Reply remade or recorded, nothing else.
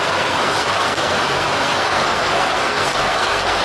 remade